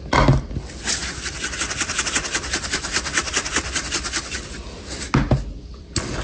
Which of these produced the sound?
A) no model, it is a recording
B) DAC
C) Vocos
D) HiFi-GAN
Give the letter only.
A